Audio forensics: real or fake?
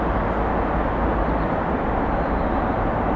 real